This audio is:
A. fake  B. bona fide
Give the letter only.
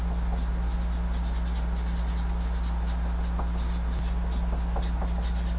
B